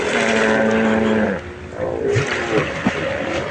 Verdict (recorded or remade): recorded